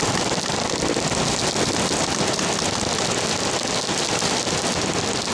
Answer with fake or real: real